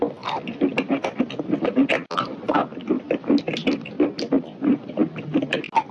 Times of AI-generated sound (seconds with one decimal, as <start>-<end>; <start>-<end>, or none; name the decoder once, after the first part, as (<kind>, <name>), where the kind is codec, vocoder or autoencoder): none